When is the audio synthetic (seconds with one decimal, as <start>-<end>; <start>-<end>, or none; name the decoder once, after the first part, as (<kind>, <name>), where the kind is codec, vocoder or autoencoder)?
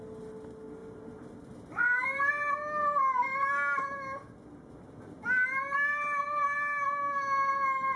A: 0.8-2.3 (vocoder, BigVGAN v2)